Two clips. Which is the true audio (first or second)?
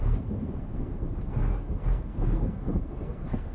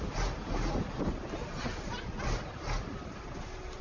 second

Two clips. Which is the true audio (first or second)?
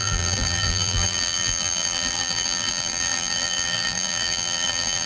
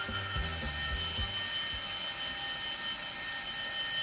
second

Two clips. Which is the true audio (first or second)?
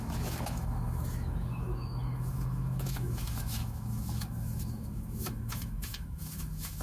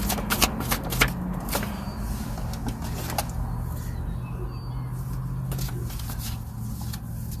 second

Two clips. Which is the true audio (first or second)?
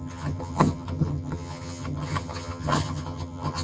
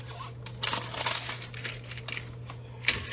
second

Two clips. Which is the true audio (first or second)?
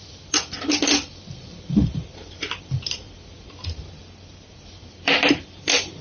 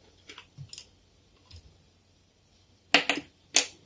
second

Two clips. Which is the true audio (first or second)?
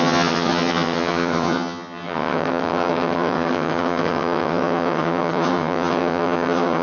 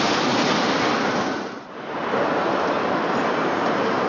second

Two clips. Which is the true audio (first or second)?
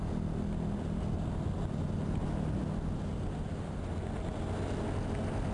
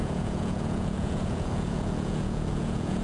first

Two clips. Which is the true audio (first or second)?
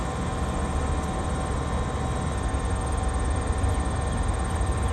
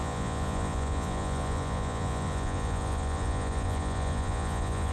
first